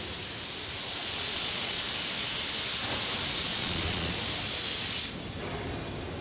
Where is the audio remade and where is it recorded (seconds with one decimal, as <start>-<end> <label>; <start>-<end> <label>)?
0.0-1.0 recorded; 1.0-1.8 remade; 1.8-3.5 recorded; 3.5-4.1 remade; 4.1-6.2 recorded